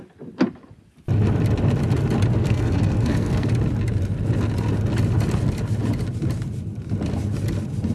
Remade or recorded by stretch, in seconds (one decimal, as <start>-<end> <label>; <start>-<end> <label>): 0.0-2.4 recorded; 2.4-3.5 remade; 3.5-7.9 recorded